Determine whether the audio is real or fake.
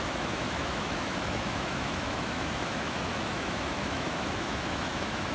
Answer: fake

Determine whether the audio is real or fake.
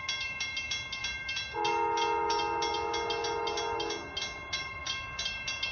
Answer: real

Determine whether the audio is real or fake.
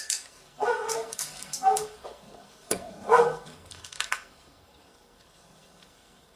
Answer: fake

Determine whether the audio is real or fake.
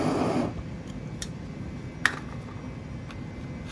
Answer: real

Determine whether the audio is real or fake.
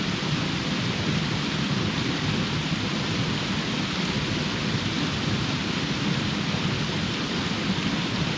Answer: real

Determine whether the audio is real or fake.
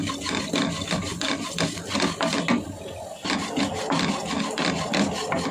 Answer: real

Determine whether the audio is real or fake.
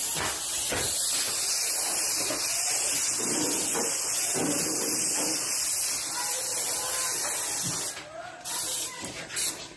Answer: real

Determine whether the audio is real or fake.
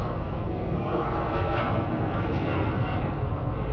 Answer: fake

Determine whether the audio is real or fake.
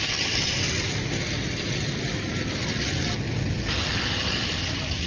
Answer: real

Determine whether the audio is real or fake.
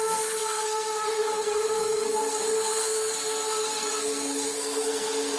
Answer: fake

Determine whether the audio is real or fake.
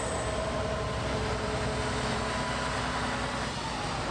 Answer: real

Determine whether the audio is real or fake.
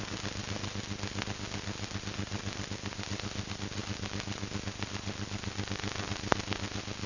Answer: real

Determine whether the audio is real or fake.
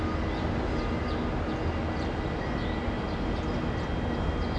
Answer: real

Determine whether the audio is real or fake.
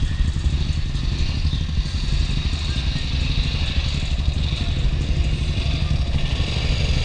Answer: real